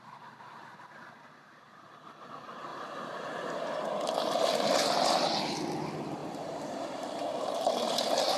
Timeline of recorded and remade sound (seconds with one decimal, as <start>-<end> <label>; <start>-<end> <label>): 0.0-2.7 recorded; 2.7-3.5 remade; 3.5-6.2 recorded; 6.2-8.0 remade; 8.0-8.4 recorded